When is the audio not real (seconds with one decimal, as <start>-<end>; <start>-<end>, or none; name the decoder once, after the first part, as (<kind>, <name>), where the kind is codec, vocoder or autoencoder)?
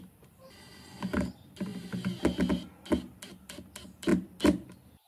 none